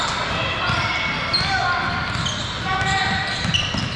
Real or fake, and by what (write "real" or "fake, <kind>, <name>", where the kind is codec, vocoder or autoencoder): real